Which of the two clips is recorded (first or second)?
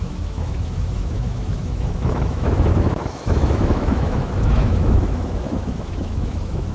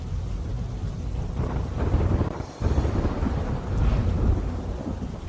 second